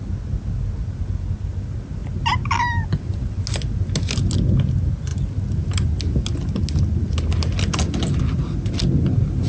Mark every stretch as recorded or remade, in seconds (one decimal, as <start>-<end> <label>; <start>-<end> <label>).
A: 0.0-9.5 recorded